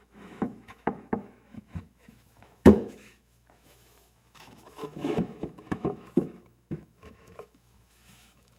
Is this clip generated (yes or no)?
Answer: yes